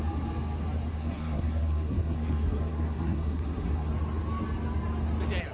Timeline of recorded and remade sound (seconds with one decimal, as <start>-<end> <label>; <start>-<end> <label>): 0.0-0.9 recorded; 0.9-3.9 remade; 3.9-5.5 recorded